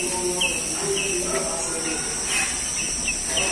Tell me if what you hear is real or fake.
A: real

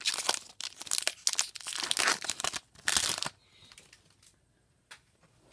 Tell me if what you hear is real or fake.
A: real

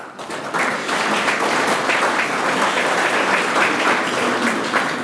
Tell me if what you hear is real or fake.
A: real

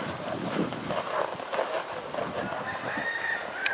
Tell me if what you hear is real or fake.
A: real